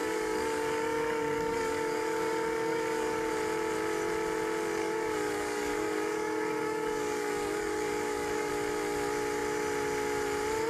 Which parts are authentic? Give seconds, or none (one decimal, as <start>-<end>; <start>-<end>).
3.3-4.8; 8.5-10.7